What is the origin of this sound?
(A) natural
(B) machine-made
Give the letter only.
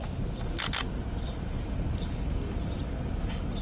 A